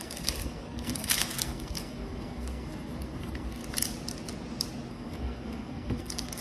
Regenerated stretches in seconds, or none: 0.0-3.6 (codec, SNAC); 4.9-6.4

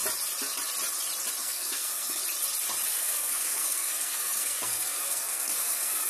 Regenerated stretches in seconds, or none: 1.4-2.2 (codec, SNAC); 2.9-6.1

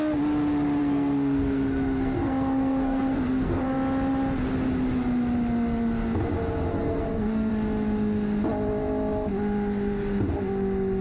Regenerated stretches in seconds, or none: 0.8-3.6 (codec, SNAC); 6.7-7.5